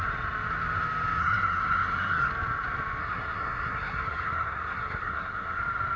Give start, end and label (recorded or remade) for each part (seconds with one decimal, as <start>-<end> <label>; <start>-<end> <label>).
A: 0.0-1.2 recorded; 1.2-2.3 remade; 2.3-3.0 recorded; 3.0-5.6 remade; 5.6-6.0 recorded